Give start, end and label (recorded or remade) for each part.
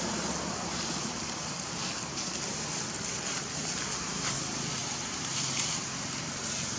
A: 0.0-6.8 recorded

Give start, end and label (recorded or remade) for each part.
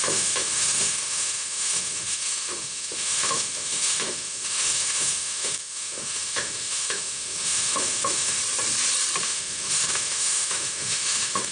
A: 0.0-8.4 remade; 8.4-9.2 recorded; 9.2-11.5 remade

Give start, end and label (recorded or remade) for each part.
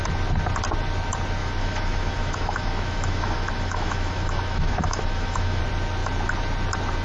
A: 0.0-1.4 recorded; 1.4-5.6 remade; 5.6-7.0 recorded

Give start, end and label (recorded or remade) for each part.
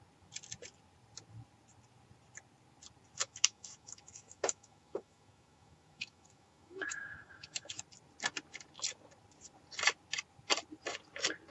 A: 0.0-3.2 recorded; 3.2-7.8 remade; 7.8-11.5 recorded